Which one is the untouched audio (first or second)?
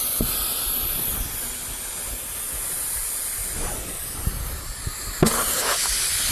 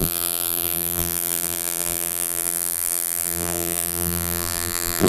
first